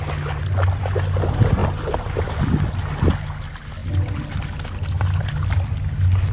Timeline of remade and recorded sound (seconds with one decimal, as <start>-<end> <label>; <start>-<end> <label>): 0.0-6.3 recorded